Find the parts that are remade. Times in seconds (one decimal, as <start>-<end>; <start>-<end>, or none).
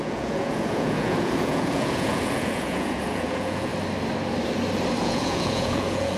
0.0-3.7; 5.0-6.2